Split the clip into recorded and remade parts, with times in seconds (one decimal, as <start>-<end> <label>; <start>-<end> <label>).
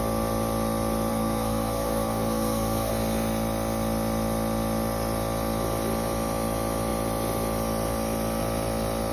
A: 0.0-1.1 recorded; 1.1-2.9 remade; 2.9-9.1 recorded